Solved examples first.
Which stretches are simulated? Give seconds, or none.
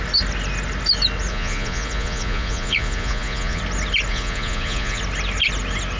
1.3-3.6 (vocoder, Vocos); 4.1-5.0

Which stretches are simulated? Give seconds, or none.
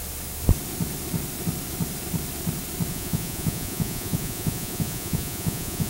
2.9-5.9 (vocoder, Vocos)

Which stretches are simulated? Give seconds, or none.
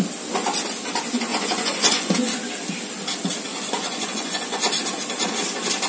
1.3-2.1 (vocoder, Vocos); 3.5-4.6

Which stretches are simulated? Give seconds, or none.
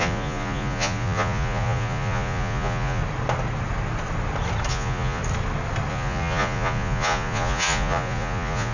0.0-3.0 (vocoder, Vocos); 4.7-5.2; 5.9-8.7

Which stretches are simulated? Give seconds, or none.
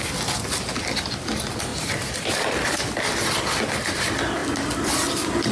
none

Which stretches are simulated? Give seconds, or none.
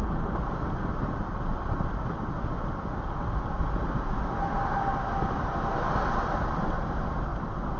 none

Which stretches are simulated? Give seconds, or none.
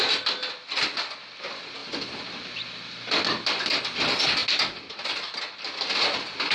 none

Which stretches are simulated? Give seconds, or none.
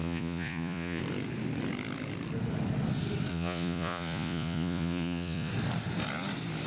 0.0-1.0 (vocoder, Vocos); 3.3-5.5